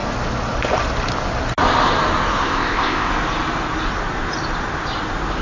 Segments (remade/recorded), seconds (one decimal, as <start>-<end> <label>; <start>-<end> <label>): 0.0-2.4 recorded; 2.4-3.1 remade; 3.1-5.4 recorded